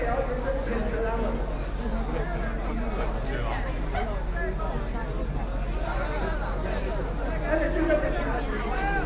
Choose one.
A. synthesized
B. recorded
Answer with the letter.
B